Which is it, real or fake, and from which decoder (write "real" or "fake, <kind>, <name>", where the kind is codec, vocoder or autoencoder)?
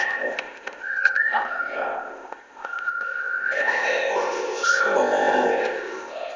fake, codec, ZipCodec